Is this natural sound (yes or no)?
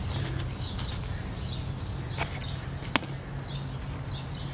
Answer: yes